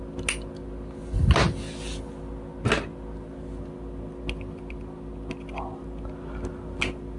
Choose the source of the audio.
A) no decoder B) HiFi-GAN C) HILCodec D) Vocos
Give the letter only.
A